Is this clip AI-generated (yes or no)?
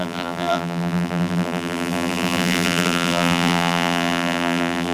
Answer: yes